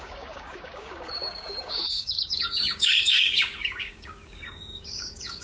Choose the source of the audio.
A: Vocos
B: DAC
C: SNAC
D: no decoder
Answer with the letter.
B